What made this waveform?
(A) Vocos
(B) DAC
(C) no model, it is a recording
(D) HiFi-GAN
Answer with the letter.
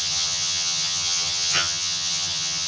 D